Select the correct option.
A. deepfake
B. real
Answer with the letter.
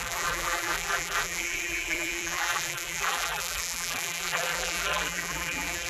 A